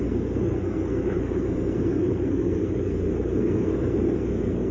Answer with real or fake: fake